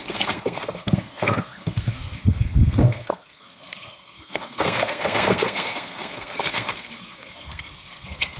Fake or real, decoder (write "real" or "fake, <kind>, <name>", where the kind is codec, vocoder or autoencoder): fake, codec, SNAC